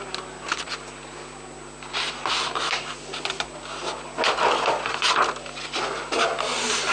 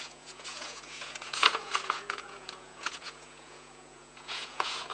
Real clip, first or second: first